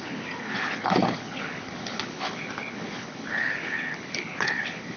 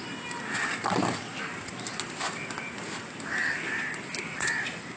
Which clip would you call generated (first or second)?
first